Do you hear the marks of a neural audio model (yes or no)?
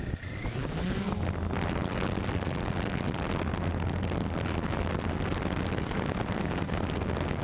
no